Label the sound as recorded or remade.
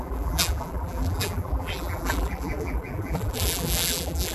remade